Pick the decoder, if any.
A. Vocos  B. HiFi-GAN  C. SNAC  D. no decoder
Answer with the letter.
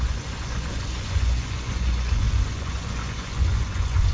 A